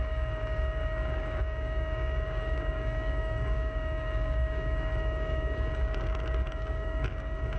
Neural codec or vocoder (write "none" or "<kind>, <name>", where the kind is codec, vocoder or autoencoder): codec, DAC